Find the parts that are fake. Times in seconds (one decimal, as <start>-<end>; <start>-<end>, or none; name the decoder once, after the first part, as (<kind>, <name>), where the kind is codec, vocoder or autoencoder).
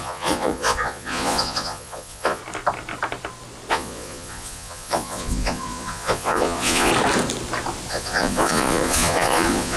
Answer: 0.0-2.4 (vocoder, Vocos); 3.7-6.9; 7.9-9.8